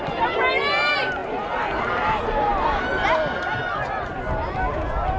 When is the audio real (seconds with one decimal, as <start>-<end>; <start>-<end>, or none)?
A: 0.0-5.2